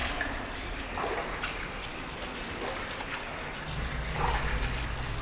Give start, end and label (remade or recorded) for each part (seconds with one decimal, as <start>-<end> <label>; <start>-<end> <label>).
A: 0.0-0.8 remade; 0.8-5.2 recorded